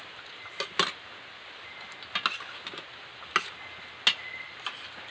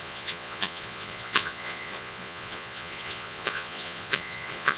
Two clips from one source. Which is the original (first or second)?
first